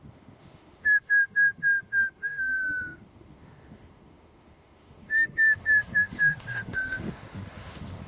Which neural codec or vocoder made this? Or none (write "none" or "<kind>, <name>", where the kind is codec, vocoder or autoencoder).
autoencoder, DAC-VAE